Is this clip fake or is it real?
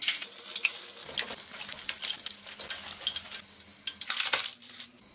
real